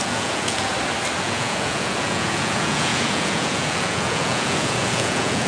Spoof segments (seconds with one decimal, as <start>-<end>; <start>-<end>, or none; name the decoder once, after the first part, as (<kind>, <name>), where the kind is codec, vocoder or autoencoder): 0.0-0.7 (vocoder, Vocos); 1.2-5.5